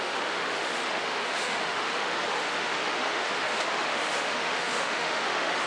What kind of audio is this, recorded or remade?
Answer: remade